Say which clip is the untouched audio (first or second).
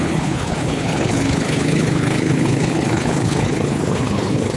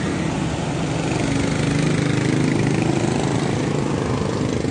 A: second